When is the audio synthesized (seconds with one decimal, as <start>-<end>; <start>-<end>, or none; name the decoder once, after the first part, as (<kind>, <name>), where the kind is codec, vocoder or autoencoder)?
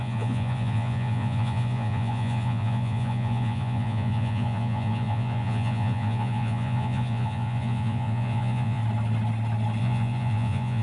0.0-8.8 (vocoder, Vocos); 9.8-10.8